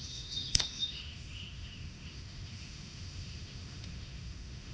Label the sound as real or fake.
fake